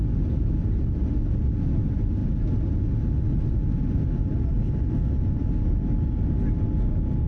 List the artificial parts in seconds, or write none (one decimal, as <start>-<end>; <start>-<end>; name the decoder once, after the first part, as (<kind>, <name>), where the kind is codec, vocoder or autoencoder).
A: none